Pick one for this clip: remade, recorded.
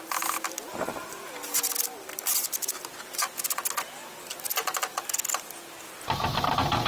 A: recorded